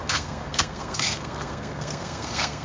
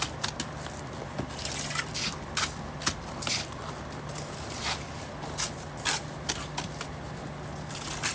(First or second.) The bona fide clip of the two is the second